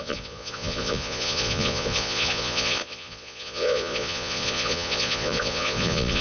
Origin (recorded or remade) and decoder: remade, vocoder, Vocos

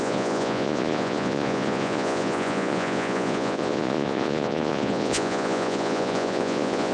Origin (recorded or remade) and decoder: remade, vocoder, Vocos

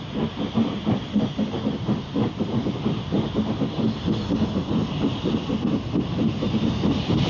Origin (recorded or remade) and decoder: recorded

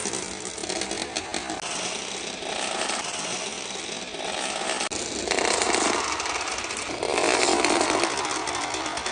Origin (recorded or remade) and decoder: recorded